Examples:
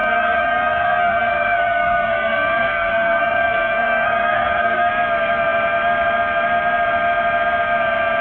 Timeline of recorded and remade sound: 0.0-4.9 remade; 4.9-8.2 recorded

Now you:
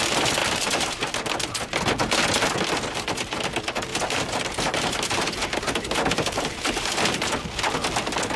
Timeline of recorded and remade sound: 0.0-0.4 recorded; 0.4-1.1 remade; 1.1-3.9 recorded; 3.9-7.3 remade; 7.3-8.4 recorded